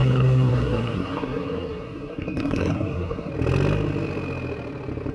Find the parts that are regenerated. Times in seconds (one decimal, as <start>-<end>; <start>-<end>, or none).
0.0-3.3